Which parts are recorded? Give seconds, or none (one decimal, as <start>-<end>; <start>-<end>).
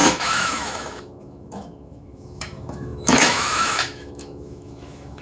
none